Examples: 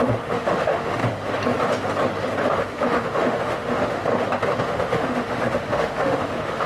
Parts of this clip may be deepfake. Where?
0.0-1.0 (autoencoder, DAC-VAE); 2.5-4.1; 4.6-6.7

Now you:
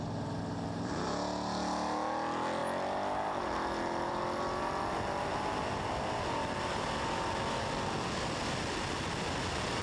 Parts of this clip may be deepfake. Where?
none

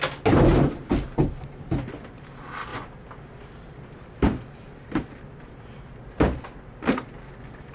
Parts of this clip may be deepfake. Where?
none

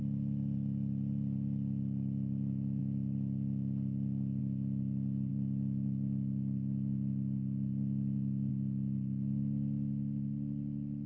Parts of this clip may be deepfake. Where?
5.3-8.5 (autoencoder, DAC-VAE)

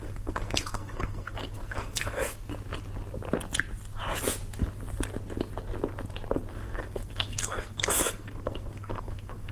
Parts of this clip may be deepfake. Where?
0.0-2.5 (codec, SNAC); 6.5-9.5

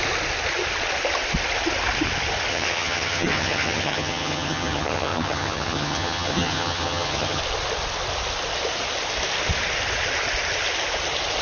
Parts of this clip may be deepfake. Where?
2.5-7.4 (vocoder, HiFi-GAN)